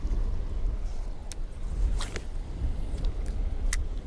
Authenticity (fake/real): real